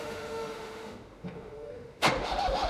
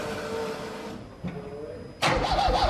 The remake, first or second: first